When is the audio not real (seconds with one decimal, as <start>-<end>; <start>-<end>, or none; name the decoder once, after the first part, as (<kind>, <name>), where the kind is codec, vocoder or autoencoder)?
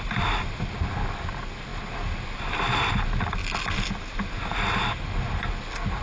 none